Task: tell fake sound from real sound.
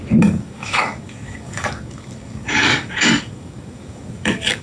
fake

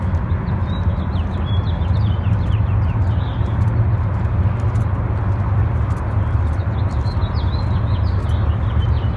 real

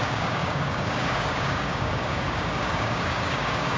fake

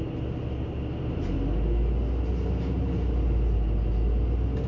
real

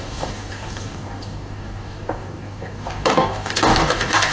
fake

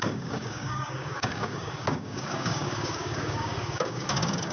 fake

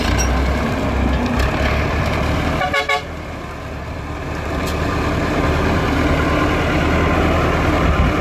real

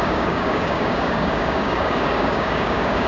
fake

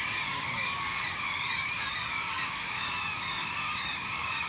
fake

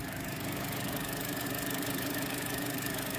fake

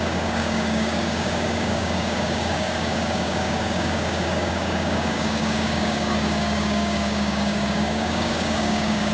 fake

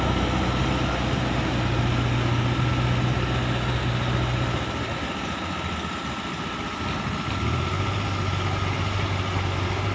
real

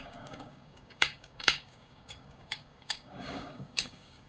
fake